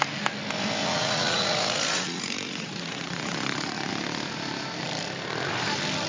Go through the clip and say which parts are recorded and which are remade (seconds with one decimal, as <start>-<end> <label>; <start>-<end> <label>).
0.0-0.8 recorded; 0.8-3.9 remade; 3.9-6.1 recorded